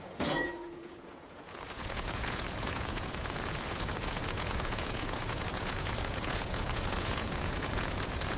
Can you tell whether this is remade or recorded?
remade